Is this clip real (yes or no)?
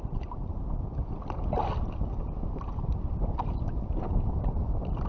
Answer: yes